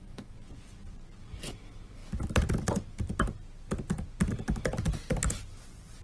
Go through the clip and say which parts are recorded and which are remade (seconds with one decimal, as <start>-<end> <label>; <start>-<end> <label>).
0.0-2.0 remade; 2.0-5.6 recorded; 5.6-6.0 remade